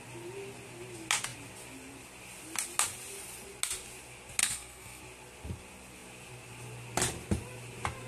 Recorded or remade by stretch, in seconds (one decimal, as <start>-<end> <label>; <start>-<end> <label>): 0.0-4.4 recorded; 4.4-5.0 remade; 5.0-8.1 recorded